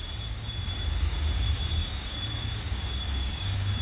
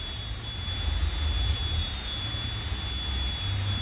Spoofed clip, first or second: first